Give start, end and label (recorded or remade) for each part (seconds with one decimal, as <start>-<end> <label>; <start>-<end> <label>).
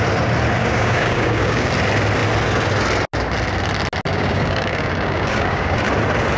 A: 0.0-0.6 recorded; 0.6-1.7 remade; 1.7-4.1 recorded; 4.1-5.8 remade; 5.8-6.4 recorded